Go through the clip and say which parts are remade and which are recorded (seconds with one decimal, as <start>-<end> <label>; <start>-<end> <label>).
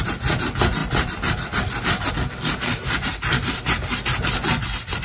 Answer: 0.0-0.8 recorded; 0.8-2.1 remade; 2.1-5.0 recorded